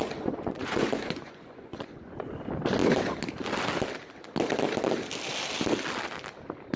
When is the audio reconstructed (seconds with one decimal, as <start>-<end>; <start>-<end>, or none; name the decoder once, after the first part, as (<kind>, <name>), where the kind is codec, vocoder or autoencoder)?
0.0-2.3 (vocoder, Vocos)